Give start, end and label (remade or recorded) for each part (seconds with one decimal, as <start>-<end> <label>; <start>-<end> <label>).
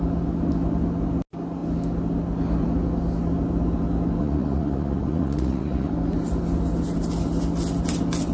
0.0-4.2 recorded; 4.2-5.9 remade; 5.9-8.3 recorded